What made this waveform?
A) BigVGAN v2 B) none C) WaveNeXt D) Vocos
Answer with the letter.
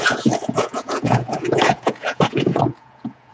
D